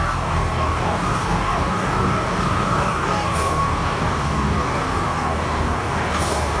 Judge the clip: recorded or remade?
remade